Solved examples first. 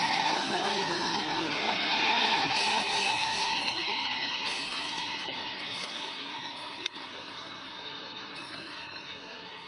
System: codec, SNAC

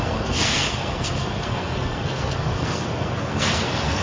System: codec, SNAC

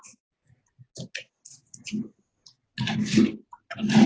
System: none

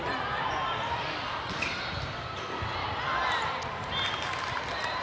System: none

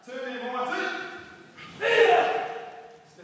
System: none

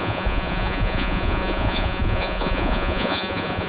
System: vocoder, Vocos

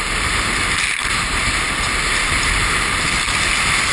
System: none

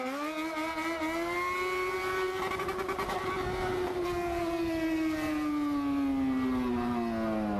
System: none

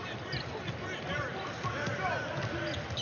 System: none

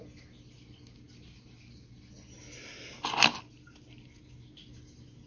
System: none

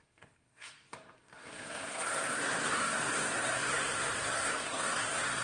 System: codec, SNAC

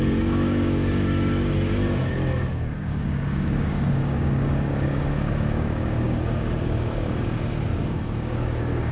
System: codec, DAC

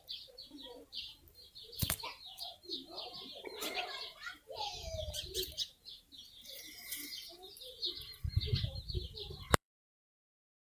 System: vocoder, BigVGAN v2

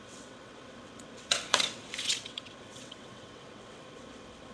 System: vocoder, WaveNeXt